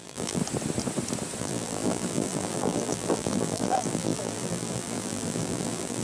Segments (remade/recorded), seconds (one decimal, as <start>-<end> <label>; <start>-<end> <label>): 0.0-0.4 remade; 0.4-1.4 recorded; 1.4-6.0 remade